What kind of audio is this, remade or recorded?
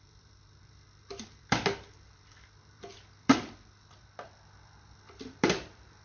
remade